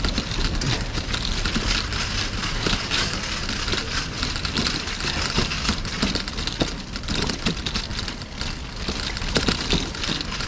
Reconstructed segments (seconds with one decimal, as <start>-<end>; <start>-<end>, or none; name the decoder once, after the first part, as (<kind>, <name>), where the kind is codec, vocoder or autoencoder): 2.4-3.2 (codec, DAC)